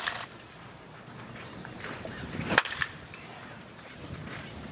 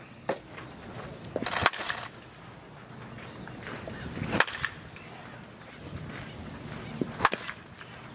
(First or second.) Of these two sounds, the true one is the second